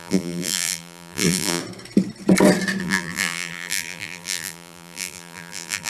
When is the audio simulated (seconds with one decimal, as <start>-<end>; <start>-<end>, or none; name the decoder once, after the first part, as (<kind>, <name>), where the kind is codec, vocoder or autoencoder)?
0.0-1.6 (vocoder, BigVGAN v2); 2.8-5.9

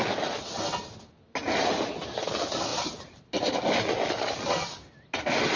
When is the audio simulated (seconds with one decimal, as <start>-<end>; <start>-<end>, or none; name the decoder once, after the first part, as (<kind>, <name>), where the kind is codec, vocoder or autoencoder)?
2.7-3.5 (vocoder, BigVGAN v2)

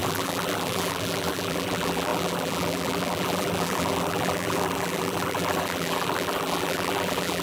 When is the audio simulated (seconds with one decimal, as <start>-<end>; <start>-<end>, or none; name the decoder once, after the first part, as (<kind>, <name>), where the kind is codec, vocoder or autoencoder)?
0.0-7.4 (vocoder, BigVGAN v2)

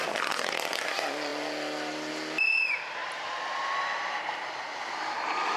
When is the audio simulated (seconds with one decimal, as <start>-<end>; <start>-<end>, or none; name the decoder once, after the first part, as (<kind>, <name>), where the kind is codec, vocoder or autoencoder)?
1.3-2.1 (vocoder, BigVGAN v2); 3.0-3.8

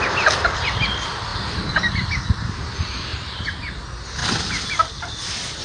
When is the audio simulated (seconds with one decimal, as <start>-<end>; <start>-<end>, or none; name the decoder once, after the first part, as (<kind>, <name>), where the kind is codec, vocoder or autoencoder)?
3.1-3.8 (vocoder, BigVGAN v2)

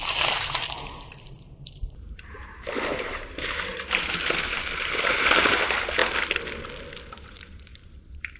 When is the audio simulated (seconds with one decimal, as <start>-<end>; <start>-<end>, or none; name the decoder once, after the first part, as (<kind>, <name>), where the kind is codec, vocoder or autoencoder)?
0.0-6.0 (vocoder, BigVGAN v2); 7.1-8.4

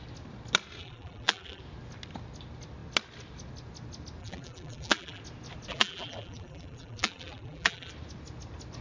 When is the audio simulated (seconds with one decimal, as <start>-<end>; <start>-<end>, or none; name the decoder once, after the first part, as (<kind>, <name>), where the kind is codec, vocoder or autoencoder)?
0.8-1.6 (vocoder, BigVGAN v2); 4.2-5.2; 5.7-7.9

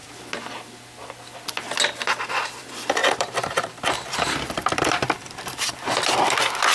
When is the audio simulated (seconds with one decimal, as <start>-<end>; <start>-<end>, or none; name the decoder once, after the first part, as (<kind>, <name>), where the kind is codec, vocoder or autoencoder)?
2.3-6.7 (vocoder, BigVGAN v2)